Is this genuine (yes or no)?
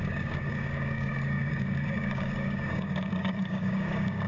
no